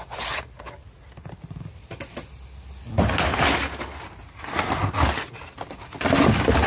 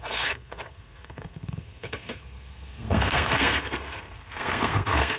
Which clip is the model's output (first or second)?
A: second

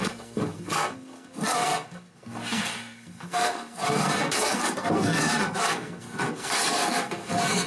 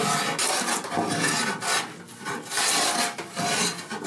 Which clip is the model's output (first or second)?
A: first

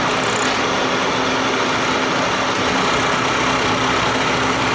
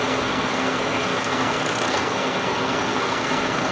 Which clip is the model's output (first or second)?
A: second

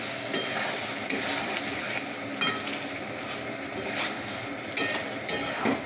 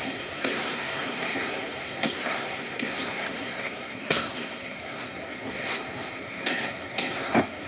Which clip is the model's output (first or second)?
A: second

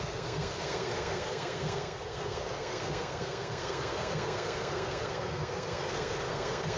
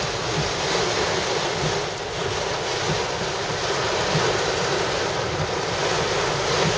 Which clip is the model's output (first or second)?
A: first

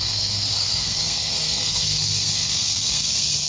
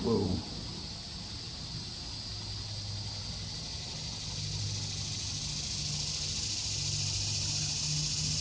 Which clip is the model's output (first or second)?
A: first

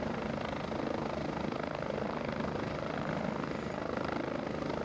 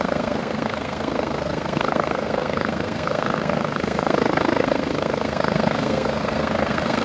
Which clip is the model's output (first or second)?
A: second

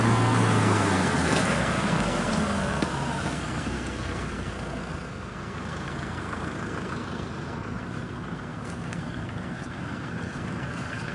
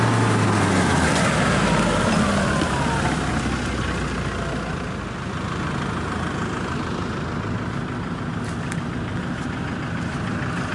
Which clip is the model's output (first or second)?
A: first